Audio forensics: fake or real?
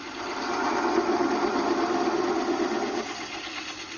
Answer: real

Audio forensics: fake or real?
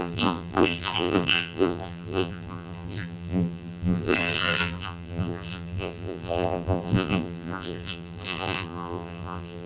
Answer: fake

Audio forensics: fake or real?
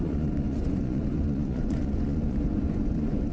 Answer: fake